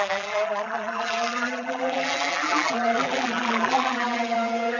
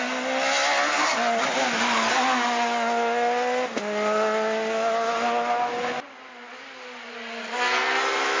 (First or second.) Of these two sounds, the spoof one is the first